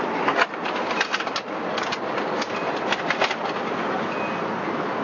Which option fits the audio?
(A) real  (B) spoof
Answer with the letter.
A